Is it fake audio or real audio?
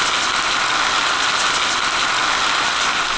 real